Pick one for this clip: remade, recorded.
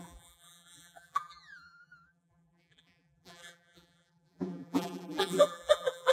remade